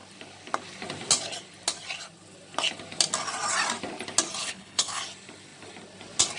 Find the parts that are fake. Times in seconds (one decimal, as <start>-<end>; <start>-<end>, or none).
4.4-5.0